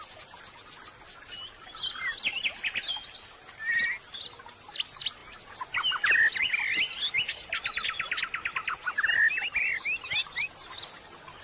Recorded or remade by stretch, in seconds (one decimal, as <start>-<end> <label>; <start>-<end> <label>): 0.0-11.4 recorded